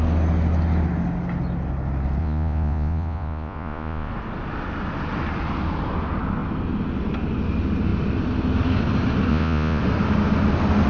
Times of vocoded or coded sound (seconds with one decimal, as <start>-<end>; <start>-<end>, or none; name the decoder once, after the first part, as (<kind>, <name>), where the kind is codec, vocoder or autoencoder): 2.2-4.1 (vocoder, Vocos); 9.3-9.8